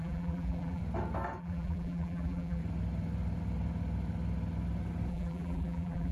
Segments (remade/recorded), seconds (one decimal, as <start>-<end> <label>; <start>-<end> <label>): 0.0-0.8 remade; 0.8-1.4 recorded; 1.4-2.6 remade; 2.6-5.1 recorded; 5.1-6.1 remade